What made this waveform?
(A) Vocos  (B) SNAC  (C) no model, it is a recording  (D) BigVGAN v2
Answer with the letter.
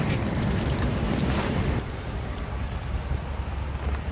C